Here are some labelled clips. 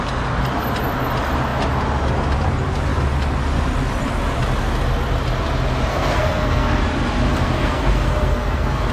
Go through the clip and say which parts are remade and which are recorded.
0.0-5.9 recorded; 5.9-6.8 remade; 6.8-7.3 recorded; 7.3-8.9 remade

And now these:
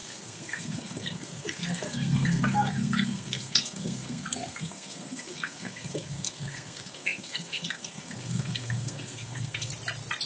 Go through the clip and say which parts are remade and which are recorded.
0.0-9.7 remade; 9.7-10.3 recorded

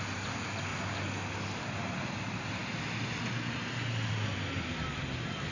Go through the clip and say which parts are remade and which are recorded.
0.0-5.5 recorded

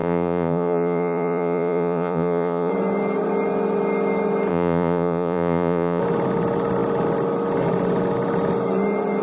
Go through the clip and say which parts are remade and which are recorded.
0.0-2.7 remade; 2.7-4.5 recorded; 4.5-6.0 remade; 6.0-9.2 recorded

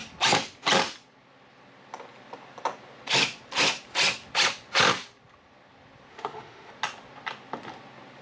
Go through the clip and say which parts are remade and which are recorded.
0.0-6.1 recorded; 6.1-6.7 remade; 6.7-8.2 recorded

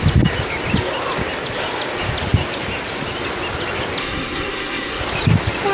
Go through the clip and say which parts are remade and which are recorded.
0.0-4.0 recorded; 4.0-5.0 remade; 5.0-5.7 recorded

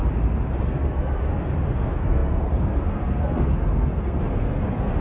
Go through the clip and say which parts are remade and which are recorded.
0.0-0.6 recorded; 0.6-1.3 remade; 1.3-1.8 recorded; 1.8-5.0 remade

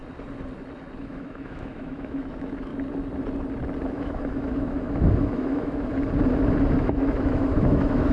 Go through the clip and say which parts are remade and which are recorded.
0.0-1.0 recorded; 1.0-2.7 remade; 2.7-3.9 recorded; 3.9-5.9 remade; 5.9-6.8 recorded; 6.8-8.1 remade